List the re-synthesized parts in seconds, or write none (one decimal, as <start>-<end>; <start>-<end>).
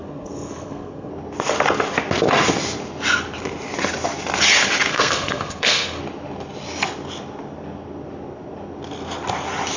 0.0-1.1; 4.9-6.0